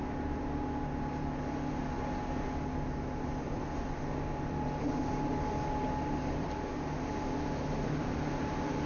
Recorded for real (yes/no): yes